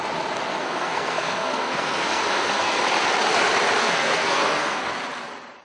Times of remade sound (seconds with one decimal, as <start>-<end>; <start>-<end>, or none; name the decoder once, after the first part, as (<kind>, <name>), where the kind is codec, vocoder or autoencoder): 0.5-2.8 (codec, SNAC); 3.8-4.9